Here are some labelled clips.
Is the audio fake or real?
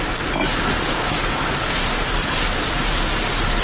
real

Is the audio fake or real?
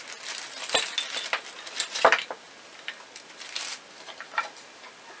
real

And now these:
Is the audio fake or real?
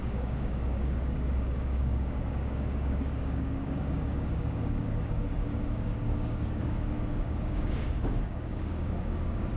fake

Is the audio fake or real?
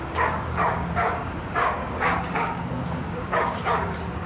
fake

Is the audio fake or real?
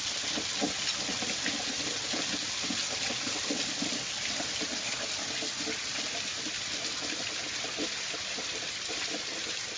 real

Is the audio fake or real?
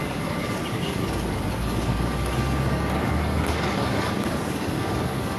fake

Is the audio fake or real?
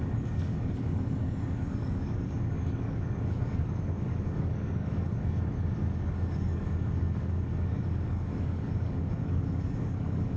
fake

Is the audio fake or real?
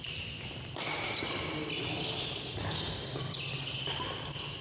real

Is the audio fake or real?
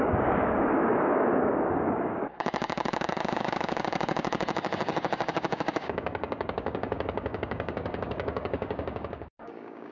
fake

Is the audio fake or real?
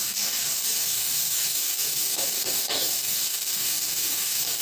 fake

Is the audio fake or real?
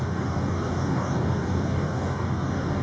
fake